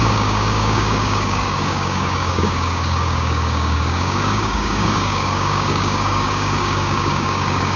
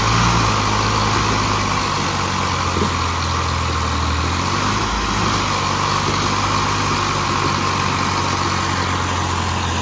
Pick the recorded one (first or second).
second